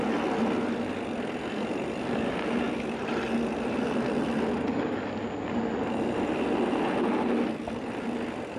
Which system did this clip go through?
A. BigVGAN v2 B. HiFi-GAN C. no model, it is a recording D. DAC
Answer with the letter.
C